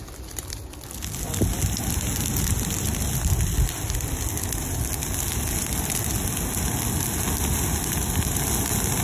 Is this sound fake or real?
real